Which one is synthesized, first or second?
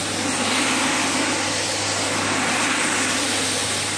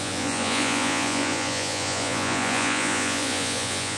second